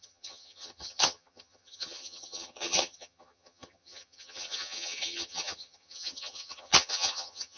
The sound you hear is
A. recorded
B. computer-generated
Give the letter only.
B